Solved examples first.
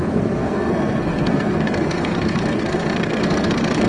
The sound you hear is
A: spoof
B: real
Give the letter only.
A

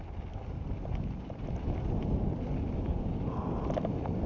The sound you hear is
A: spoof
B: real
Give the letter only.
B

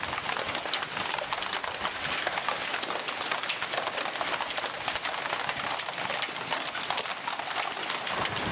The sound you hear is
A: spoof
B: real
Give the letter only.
B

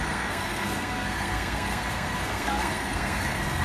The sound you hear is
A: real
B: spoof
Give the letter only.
B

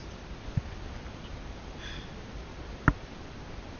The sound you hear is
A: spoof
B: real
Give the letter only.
B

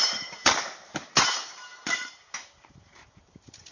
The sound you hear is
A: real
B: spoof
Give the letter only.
B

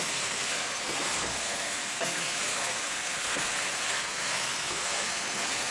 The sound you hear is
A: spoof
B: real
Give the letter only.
A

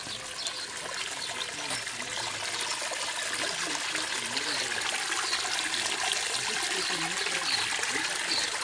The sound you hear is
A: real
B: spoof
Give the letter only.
A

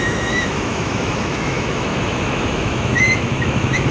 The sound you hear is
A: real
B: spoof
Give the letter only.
B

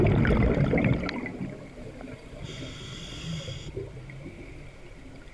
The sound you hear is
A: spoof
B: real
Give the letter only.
B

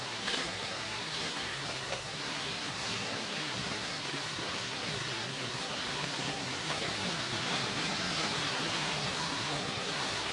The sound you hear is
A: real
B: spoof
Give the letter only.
B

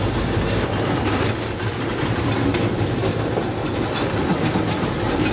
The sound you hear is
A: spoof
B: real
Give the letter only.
B